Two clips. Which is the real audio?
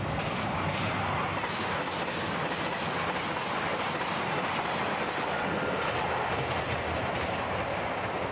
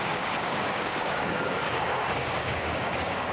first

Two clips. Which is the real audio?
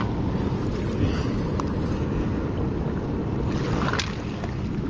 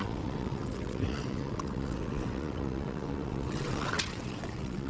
first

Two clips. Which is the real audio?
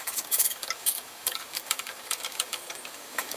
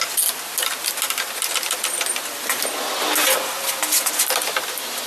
second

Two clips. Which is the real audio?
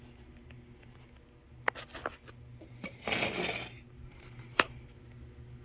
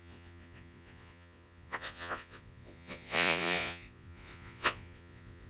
first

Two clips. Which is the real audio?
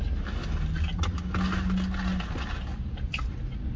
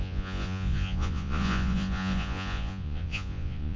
first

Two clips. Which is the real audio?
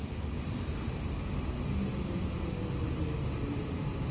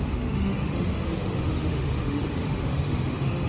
first